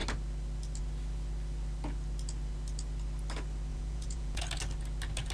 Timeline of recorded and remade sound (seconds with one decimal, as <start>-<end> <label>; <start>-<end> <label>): 0.0-3.7 recorded; 3.7-4.4 remade; 4.4-5.3 recorded